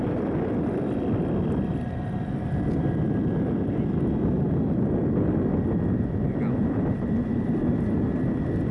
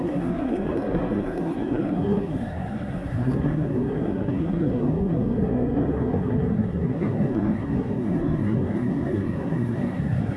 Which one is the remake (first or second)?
second